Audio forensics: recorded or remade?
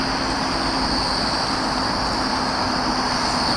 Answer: recorded